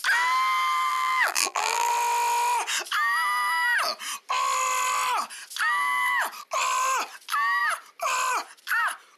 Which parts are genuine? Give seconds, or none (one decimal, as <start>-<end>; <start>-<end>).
0.0-0.9; 1.9-9.2